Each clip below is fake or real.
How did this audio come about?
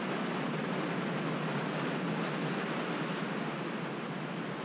real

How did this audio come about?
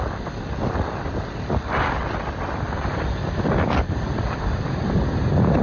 real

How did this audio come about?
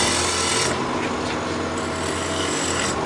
real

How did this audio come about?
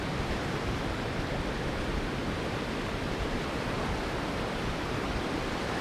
fake